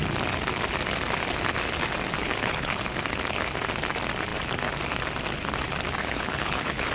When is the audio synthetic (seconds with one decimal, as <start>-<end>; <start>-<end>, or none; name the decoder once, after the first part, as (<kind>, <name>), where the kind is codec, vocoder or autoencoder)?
2.2-2.8 (codec, HILCodec); 6.0-6.9